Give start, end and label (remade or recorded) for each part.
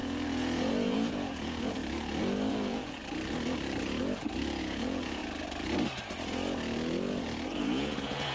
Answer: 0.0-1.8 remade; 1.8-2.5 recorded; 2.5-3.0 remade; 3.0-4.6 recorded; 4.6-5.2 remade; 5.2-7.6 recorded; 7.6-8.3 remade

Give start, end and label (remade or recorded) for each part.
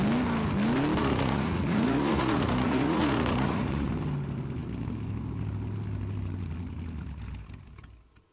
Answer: 0.0-1.0 recorded; 1.0-3.9 remade; 3.9-8.3 recorded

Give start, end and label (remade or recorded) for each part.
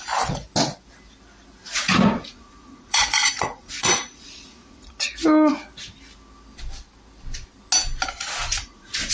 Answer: 0.0-1.6 recorded; 1.6-5.0 remade; 5.0-8.4 recorded; 8.4-9.1 remade